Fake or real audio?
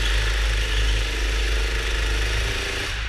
real